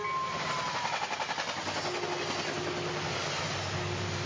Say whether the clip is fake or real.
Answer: real